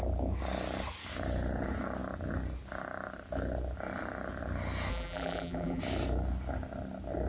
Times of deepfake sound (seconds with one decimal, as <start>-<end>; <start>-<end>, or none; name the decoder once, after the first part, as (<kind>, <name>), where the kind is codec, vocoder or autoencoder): 4.9-5.8 (vocoder, BigVGAN v2)